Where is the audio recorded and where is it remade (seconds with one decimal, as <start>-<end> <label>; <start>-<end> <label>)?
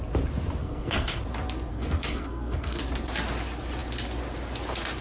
0.0-0.6 recorded; 0.6-1.2 remade; 1.2-1.7 recorded; 1.7-2.8 remade; 2.8-5.0 recorded